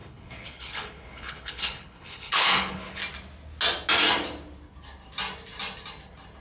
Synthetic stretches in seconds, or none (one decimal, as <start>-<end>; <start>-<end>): 0.0-3.0